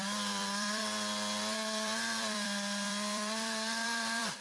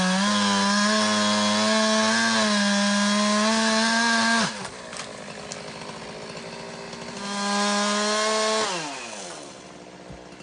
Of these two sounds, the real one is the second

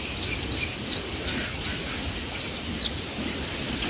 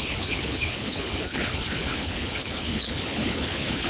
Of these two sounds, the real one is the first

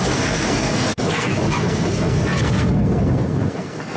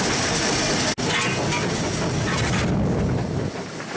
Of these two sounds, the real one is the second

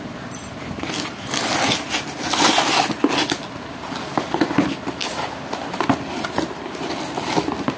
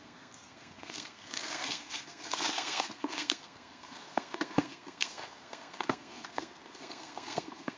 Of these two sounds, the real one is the first